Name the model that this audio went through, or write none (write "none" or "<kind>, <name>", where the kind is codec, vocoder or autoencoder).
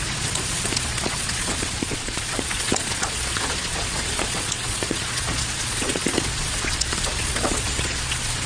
vocoder, Vocos